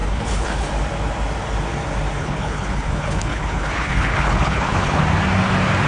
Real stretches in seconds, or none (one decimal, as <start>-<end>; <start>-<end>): 0.7-2.2; 5.0-5.9

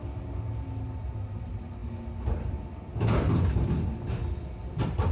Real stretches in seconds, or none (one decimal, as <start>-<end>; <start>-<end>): 0.0-5.1

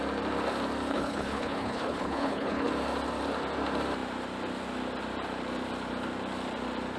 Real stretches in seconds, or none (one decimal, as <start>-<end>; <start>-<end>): 0.0-0.9; 2.7-7.0